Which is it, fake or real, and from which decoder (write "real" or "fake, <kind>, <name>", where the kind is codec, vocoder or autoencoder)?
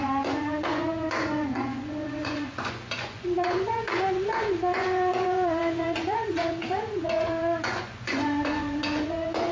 fake, vocoder, Vocos